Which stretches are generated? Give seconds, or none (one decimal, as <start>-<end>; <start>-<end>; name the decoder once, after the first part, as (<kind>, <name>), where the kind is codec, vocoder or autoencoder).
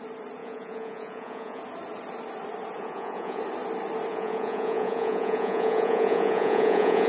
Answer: 0.4-1.6 (vocoder, Vocos); 2.8-3.4; 4.1-7.1